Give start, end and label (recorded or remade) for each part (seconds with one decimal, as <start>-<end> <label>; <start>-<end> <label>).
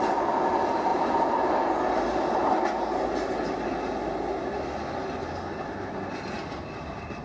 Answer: 0.0-0.9 recorded; 0.9-1.5 remade; 1.5-7.2 recorded